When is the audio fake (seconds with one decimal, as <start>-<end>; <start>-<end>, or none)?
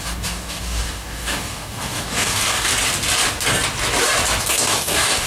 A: 0.0-2.7; 4.4-5.3